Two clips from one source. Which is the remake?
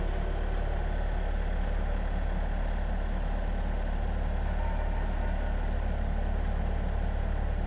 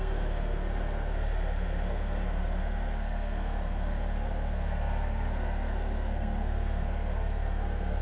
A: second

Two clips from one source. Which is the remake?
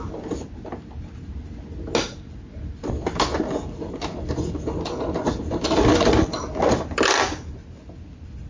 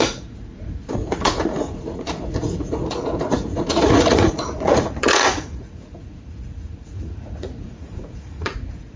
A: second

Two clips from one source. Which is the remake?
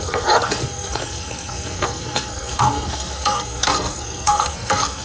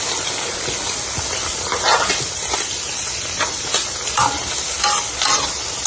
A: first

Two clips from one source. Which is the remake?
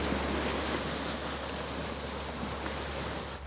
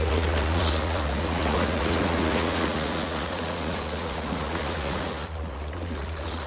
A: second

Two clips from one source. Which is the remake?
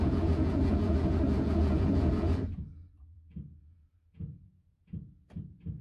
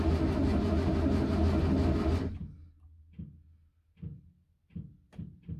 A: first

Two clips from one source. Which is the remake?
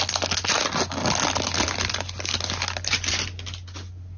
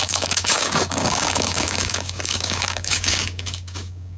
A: second